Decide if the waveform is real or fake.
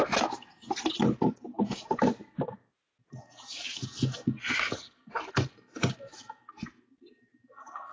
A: real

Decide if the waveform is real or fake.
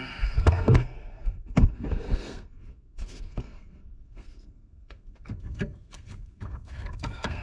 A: fake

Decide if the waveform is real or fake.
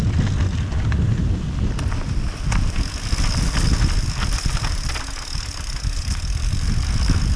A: real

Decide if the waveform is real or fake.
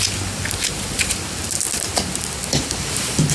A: real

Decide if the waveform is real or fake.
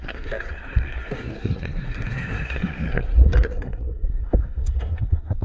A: fake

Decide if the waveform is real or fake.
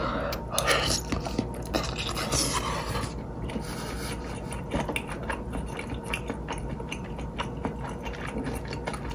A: real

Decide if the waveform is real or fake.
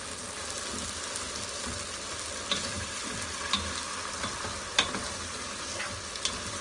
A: real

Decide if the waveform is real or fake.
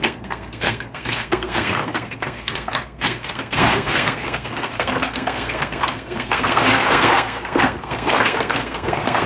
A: fake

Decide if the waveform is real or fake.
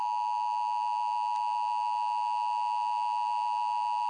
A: real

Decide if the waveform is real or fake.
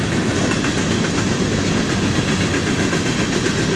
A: real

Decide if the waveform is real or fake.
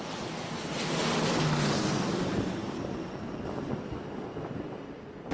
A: real